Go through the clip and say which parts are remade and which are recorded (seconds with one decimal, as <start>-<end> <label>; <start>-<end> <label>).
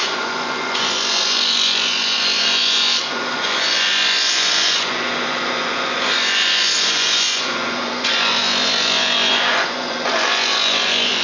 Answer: 0.0-11.2 remade